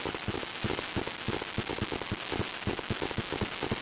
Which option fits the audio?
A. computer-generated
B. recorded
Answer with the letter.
B